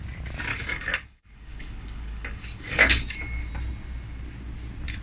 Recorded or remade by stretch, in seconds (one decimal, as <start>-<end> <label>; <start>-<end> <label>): 0.0-0.5 recorded; 0.5-3.5 remade; 3.5-5.0 recorded